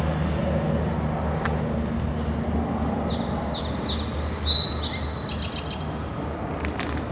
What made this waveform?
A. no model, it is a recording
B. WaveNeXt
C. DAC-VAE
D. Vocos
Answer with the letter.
A